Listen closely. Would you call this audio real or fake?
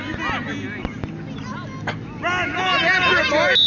real